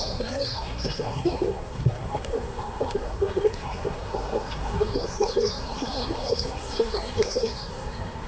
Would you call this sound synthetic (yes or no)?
yes